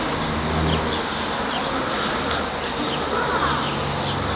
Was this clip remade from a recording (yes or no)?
no